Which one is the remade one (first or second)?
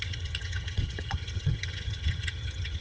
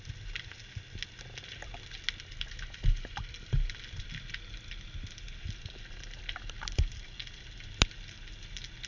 first